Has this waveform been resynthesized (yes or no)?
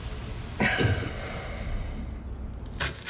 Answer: no